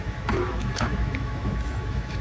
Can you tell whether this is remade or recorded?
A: remade